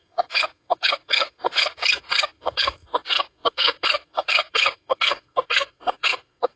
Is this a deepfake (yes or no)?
yes